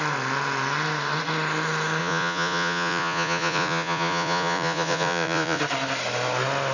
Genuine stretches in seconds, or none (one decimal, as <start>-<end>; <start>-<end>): 0.0-2.0; 5.6-6.7